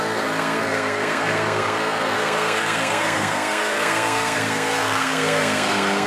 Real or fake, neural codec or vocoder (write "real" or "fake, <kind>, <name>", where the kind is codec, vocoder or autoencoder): fake, codec, SNAC